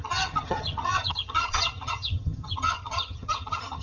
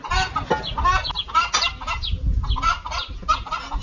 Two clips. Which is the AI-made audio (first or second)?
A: first